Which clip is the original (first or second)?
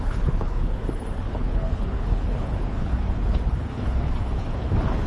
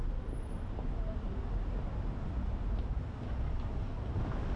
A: second